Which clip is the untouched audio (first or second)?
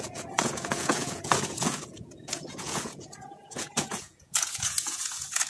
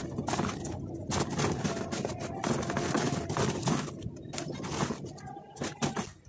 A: second